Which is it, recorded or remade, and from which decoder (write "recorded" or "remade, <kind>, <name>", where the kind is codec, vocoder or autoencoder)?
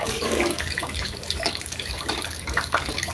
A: remade, codec, DAC